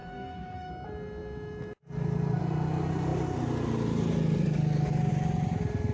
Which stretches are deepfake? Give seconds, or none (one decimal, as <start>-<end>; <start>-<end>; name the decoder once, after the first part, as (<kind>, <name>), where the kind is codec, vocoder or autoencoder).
0.0-0.7 (codec, DAC)